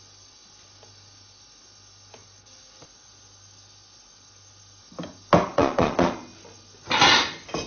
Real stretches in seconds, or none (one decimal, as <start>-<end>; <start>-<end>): 0.0-5.5; 6.1-7.7